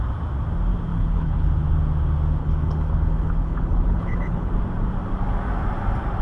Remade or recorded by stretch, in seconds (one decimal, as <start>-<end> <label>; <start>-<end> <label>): 0.0-0.9 recorded; 0.9-1.5 remade; 1.5-2.4 recorded; 2.4-4.5 remade; 4.5-6.2 recorded